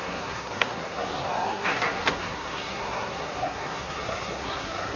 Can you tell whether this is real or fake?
fake